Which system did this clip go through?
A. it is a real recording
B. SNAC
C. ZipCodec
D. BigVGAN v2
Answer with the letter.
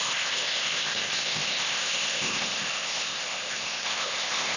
C